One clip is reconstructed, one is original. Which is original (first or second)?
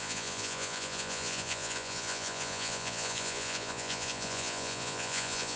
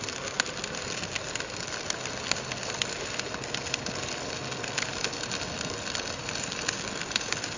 second